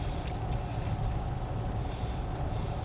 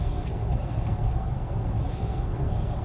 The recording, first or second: first